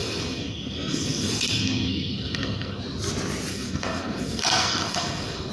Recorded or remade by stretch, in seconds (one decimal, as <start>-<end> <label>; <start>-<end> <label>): 0.0-2.8 remade; 2.8-3.5 recorded; 3.5-5.5 remade